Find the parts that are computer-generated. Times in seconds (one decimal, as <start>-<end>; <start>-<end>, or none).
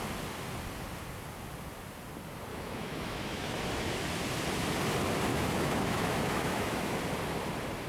2.5-3.6; 5.3-7.0